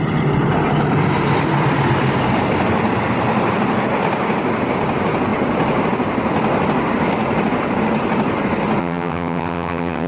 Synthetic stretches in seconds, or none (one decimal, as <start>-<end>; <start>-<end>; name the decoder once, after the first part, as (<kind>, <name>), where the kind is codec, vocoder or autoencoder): 8.8-10.1 (vocoder, HiFi-GAN)